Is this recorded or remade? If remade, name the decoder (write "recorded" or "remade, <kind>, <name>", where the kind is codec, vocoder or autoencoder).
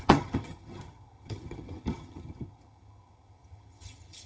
remade, vocoder, HiFi-GAN